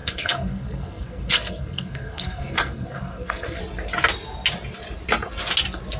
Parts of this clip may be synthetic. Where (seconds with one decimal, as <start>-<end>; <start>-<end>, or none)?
0.0-3.6